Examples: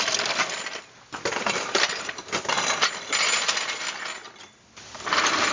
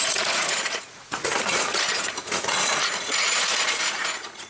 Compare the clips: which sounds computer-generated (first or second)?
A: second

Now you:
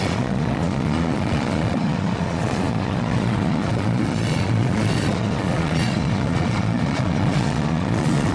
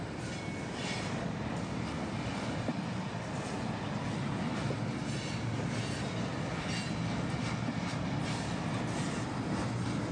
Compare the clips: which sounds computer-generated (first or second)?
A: first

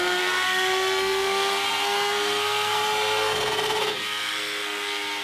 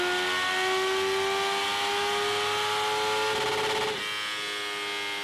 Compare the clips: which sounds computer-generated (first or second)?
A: first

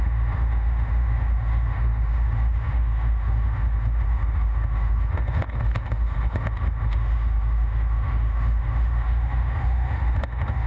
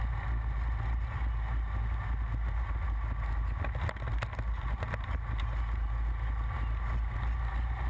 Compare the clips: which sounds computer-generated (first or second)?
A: first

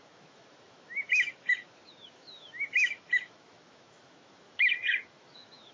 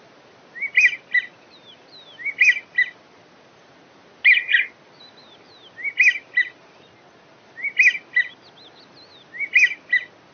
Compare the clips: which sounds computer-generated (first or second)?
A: first